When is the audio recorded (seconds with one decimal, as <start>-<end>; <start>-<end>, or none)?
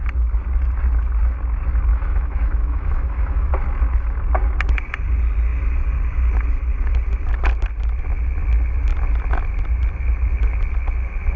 0.0-1.9; 3.5-11.4